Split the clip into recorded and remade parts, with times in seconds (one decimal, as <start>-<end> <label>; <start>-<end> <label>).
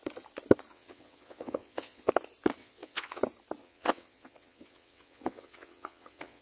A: 0.0-0.7 recorded; 0.7-2.1 remade; 2.1-2.6 recorded; 2.6-3.2 remade; 3.2-3.6 recorded; 3.6-6.4 remade